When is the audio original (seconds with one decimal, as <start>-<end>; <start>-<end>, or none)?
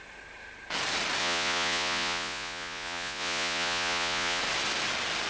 0.0-1.2; 4.4-5.3